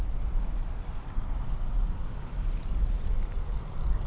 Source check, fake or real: real